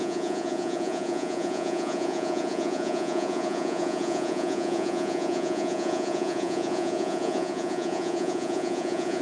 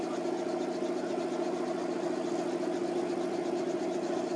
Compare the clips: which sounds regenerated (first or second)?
first